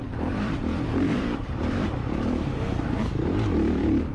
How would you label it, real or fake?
fake